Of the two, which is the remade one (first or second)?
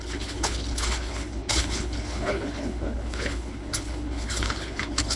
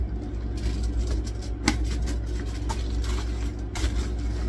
first